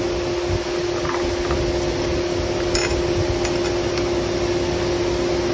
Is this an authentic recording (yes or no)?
yes